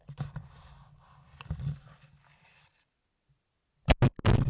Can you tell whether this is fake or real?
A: real